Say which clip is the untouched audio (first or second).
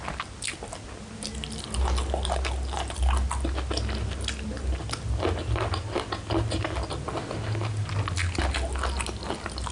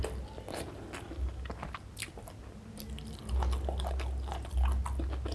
first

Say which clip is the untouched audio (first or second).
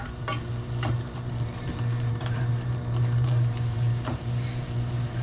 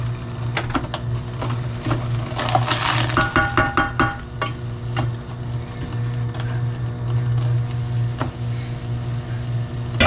second